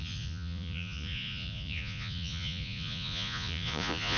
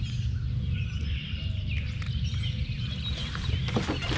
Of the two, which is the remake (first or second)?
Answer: first